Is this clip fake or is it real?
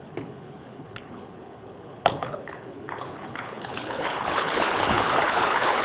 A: fake